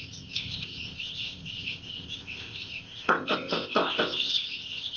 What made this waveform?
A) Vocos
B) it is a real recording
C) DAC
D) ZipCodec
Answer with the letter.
D